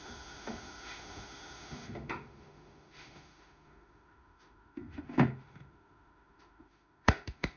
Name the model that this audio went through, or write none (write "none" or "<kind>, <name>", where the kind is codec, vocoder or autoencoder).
autoencoder, DAC-VAE